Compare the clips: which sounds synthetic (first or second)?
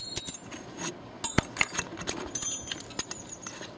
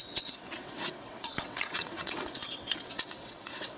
second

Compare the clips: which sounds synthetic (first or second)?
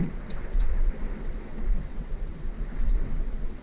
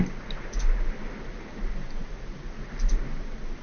first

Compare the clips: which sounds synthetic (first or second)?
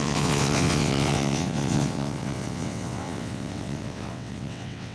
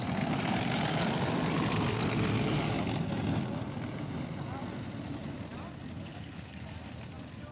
first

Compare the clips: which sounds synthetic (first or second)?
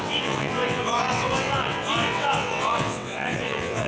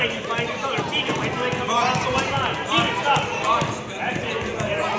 first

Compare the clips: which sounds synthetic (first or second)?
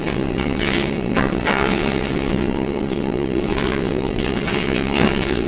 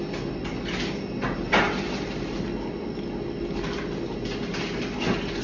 first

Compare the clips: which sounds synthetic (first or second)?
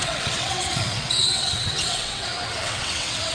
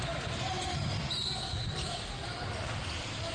first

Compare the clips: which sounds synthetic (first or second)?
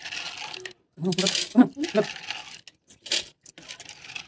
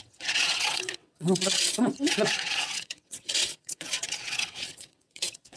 second